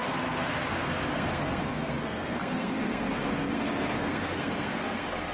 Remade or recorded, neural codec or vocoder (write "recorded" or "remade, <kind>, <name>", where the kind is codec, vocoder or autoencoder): remade, codec, SNAC